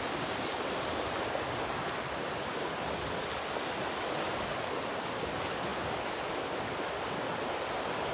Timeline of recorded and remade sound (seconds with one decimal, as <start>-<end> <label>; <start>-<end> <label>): 0.0-8.1 recorded